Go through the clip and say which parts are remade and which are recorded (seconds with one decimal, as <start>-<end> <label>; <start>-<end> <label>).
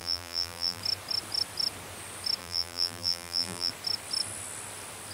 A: 0.0-0.8 remade; 0.8-2.4 recorded; 2.4-3.7 remade; 3.7-5.1 recorded